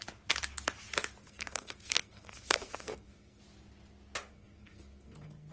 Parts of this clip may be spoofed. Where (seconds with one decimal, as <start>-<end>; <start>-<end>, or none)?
1.2-3.4; 4.3-5.5